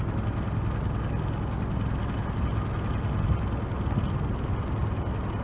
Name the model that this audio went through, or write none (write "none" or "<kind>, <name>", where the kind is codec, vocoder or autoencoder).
none